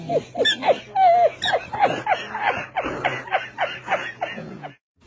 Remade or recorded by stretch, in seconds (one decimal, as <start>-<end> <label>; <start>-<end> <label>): 0.0-4.0 recorded; 4.0-5.1 remade